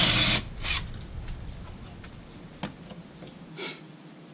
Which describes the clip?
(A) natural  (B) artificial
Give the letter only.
A